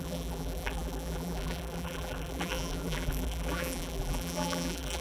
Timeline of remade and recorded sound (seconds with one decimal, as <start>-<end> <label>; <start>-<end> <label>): 0.0-5.0 remade

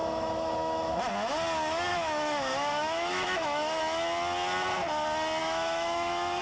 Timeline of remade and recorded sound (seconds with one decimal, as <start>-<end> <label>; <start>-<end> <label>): 0.0-1.0 remade; 1.0-1.9 recorded; 1.9-3.8 remade; 3.8-5.4 recorded; 5.4-6.4 remade